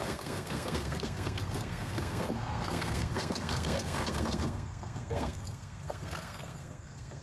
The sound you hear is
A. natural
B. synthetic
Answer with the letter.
B